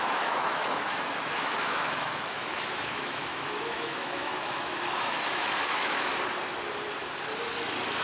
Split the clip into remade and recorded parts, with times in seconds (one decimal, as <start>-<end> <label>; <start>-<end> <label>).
0.0-6.1 remade; 6.1-8.0 recorded